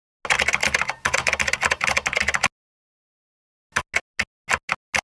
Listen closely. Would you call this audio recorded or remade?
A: recorded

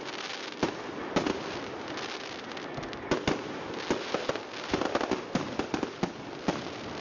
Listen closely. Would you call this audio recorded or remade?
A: recorded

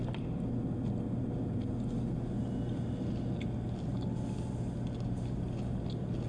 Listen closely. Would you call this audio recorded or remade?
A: recorded